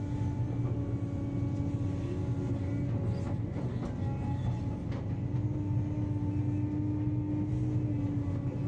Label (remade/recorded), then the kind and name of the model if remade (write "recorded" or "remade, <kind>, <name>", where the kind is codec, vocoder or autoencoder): recorded